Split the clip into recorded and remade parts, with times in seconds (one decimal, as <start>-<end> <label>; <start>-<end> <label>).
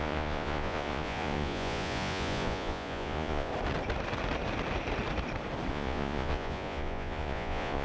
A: 0.0-3.5 remade; 3.5-5.7 recorded; 5.7-7.8 remade